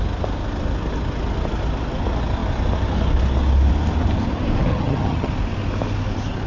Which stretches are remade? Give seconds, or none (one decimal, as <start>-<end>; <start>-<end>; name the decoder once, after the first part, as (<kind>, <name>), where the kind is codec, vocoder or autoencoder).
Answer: 4.7-5.3 (vocoder, HiFi-GAN)